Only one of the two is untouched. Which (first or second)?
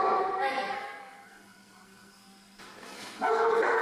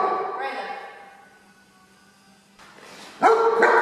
second